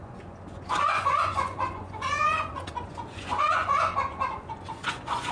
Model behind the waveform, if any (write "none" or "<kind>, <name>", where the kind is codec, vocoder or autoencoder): vocoder, Vocos